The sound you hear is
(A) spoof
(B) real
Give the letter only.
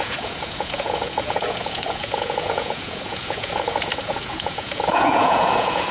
A